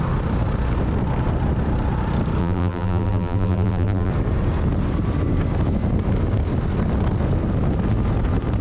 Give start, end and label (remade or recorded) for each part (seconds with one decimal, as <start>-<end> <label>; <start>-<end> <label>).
0.0-2.4 recorded; 2.4-4.1 remade; 4.1-8.6 recorded